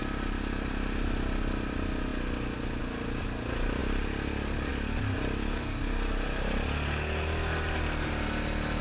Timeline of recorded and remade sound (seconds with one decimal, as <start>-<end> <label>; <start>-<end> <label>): 0.0-8.8 recorded